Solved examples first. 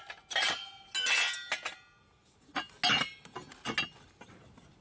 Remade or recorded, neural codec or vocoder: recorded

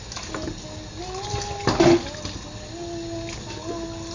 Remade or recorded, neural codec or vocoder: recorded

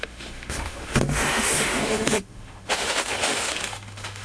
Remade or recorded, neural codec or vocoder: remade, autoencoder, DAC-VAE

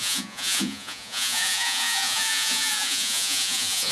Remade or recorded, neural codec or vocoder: remade, vocoder, Vocos